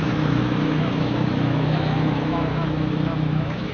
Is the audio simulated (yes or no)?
yes